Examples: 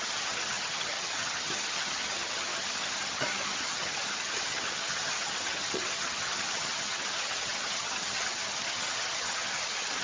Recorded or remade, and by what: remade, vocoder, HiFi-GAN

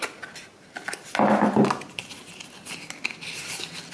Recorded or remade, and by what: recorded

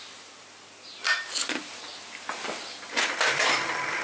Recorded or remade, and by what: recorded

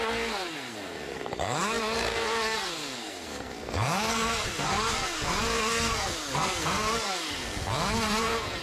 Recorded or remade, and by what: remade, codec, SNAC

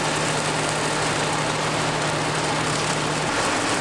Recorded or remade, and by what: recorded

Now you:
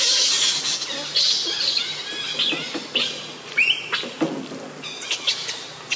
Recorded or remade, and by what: recorded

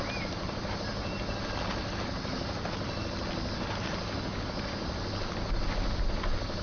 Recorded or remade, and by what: recorded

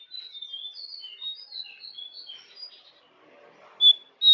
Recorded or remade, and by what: recorded